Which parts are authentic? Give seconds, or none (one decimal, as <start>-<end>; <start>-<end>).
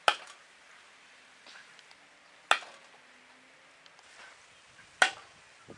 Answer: 0.0-5.8